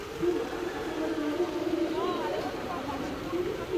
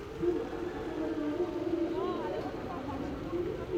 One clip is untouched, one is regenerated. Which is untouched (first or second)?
second